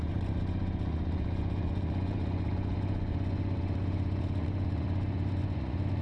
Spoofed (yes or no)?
yes